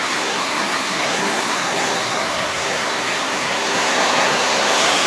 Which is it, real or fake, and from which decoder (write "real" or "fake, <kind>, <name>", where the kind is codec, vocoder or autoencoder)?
fake, codec, SNAC